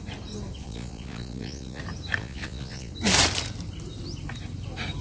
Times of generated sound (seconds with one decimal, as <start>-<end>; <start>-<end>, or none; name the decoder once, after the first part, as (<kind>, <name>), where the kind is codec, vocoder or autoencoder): 0.6-1.8 (vocoder, Vocos); 2.2-2.9